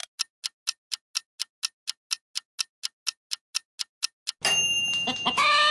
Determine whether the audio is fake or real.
real